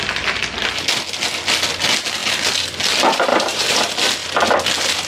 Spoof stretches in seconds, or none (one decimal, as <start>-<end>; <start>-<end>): 3.3-3.8

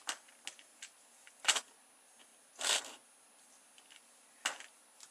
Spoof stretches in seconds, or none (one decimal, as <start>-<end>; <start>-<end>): none

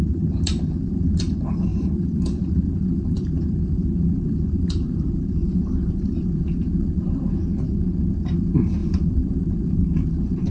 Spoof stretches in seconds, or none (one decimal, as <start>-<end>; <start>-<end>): 0.0-7.4; 8.1-10.5

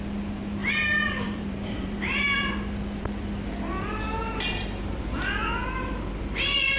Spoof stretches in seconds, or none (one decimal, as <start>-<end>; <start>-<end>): 0.6-2.5; 4.2-5.1

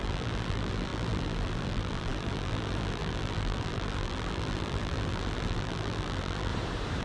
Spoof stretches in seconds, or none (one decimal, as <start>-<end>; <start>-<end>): 0.0-6.5

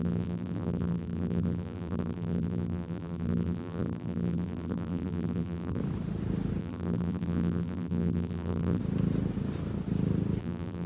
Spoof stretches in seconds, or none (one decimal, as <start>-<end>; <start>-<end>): 0.0-5.8; 6.6-8.8; 10.4-10.9

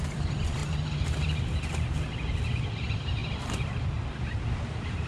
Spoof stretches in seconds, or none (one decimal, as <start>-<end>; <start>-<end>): 0.0-0.6; 2.7-3.2; 4.1-5.1